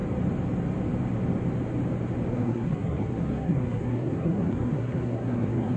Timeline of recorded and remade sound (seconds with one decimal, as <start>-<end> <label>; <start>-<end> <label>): 0.0-2.3 recorded; 2.3-5.8 remade